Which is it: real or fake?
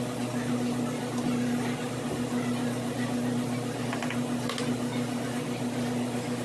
real